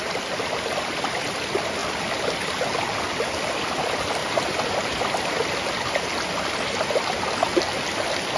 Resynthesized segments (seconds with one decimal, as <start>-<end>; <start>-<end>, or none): 4.2-5.4